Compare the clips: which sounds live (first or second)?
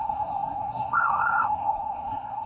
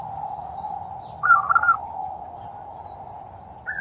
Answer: second